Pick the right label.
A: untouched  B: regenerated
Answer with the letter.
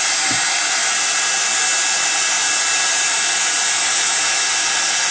A